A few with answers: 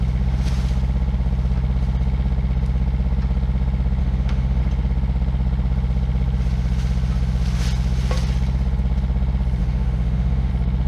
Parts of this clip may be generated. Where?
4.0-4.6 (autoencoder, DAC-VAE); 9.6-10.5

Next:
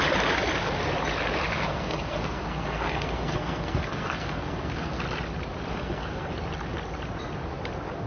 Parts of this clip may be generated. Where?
1.5-5.0 (codec, SNAC); 5.7-6.3

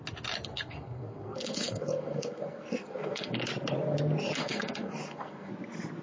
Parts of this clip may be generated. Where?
0.5-3.3 (codec, SNAC); 4.4-5.5

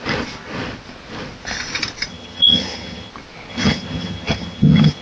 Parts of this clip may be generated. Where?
2.1-3.1 (vocoder, HiFi-GAN); 3.5-5.0

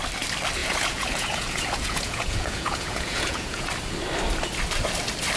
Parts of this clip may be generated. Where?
0.6-3.7 (vocoder, Vocos)

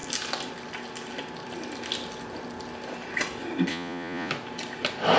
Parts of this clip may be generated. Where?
3.7-4.3 (vocoder, Vocos)

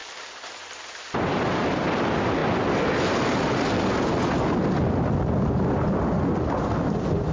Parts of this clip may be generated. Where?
none

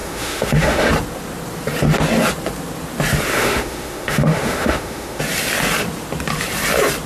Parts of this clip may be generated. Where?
0.0-0.9 (autoencoder, DAC-VAE); 3.3-5.2